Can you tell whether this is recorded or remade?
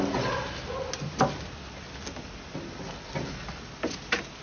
recorded